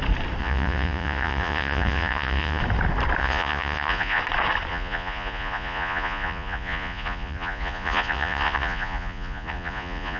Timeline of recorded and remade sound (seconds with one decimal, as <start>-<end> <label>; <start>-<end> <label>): 0.0-0.4 recorded; 0.4-2.6 remade; 2.6-3.2 recorded; 3.2-4.2 remade; 4.2-4.7 recorded; 4.7-10.2 remade